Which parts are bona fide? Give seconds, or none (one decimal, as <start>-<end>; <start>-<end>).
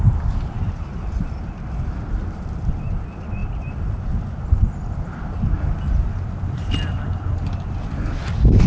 0.0-8.7